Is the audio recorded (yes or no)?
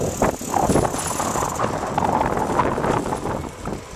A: yes